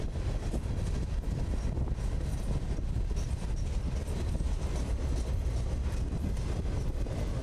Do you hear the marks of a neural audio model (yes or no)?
no